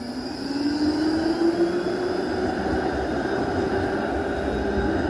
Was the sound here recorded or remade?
recorded